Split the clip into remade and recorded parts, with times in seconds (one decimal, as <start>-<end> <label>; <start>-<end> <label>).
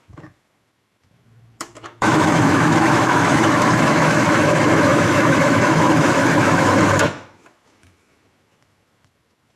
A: 0.0-9.6 remade